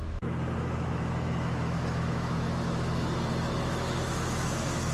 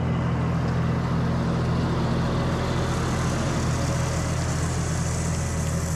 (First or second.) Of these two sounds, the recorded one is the second